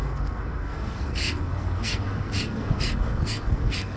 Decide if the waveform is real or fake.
fake